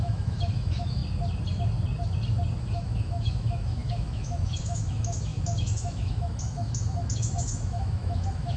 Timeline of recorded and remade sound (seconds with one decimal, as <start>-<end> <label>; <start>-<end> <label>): 0.0-1.0 remade; 1.0-2.6 recorded; 2.6-8.6 remade